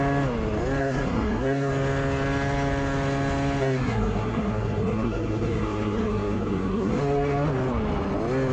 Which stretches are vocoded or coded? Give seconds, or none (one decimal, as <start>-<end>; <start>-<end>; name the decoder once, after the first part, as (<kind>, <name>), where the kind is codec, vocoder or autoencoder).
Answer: 0.8-1.7 (codec, SNAC); 3.6-7.0